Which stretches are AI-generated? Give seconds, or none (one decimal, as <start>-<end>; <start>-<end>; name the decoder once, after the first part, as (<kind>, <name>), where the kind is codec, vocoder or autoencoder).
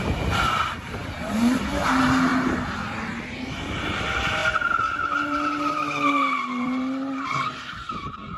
0.0-2.3 (vocoder, BigVGAN v2); 3.5-8.4